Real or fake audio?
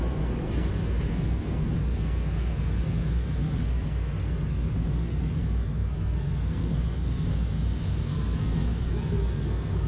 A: fake